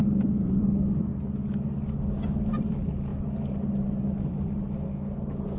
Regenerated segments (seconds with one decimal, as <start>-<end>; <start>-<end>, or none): 0.0-0.7